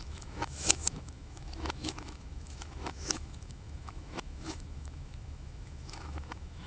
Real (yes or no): no